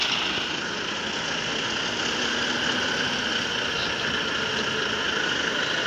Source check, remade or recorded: recorded